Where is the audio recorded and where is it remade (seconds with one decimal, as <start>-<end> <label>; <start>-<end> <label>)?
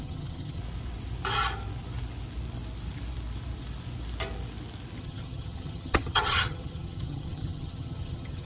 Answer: 0.0-0.6 remade; 0.6-5.0 recorded; 5.0-8.4 remade